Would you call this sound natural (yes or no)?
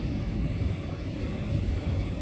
no